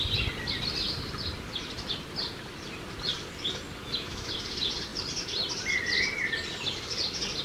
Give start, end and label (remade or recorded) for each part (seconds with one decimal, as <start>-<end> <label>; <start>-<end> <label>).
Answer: 0.0-3.8 recorded; 3.8-4.3 remade; 4.3-7.4 recorded